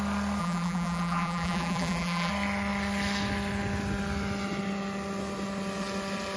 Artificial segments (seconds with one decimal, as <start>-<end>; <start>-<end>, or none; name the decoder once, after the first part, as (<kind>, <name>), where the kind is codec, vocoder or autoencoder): 0.4-2.3 (vocoder, BigVGAN v2)